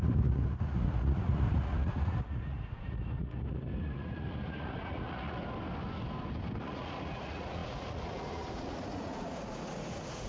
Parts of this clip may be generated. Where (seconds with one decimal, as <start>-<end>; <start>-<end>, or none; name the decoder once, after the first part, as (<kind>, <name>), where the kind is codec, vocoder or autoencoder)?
0.0-5.4 (vocoder, Vocos); 6.6-10.3